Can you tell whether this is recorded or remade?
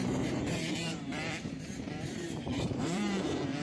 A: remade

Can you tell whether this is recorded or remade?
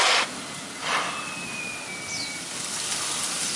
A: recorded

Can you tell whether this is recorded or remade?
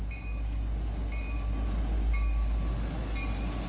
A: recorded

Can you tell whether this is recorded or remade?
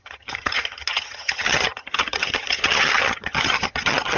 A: remade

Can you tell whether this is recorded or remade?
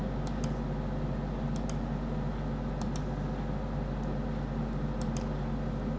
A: recorded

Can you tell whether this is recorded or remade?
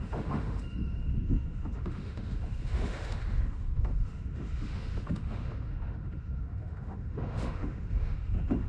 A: remade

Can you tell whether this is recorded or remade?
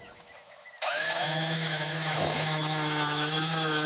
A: remade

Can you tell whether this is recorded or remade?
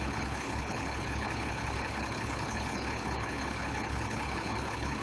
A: remade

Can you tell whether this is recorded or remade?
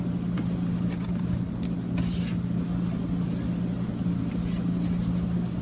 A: recorded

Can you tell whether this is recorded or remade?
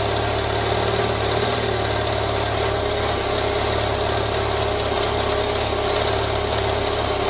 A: recorded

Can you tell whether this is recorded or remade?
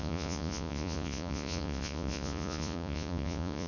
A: remade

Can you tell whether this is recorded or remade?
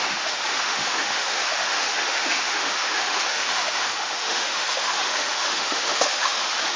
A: remade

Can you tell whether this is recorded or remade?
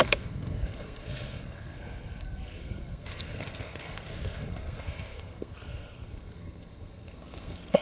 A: remade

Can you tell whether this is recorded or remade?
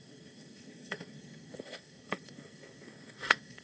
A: remade